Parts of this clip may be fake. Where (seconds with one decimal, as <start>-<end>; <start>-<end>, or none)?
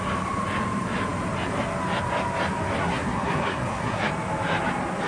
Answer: 2.8-4.1